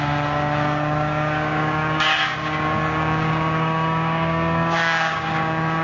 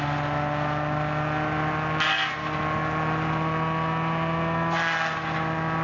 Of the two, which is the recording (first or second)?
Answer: second